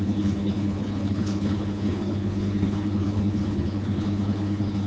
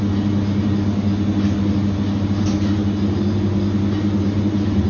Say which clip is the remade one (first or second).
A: first